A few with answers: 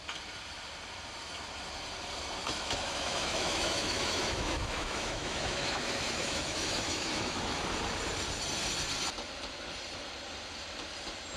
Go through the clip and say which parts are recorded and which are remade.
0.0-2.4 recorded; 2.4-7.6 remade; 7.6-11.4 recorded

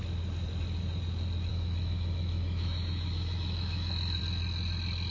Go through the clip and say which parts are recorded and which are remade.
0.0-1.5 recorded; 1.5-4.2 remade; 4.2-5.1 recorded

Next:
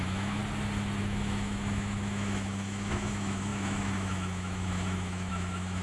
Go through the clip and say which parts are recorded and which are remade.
0.0-0.4 remade; 0.4-1.0 recorded; 1.0-5.8 remade